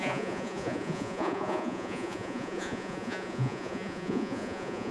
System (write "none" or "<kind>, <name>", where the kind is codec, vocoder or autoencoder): vocoder, Vocos